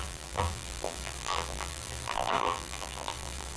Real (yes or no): no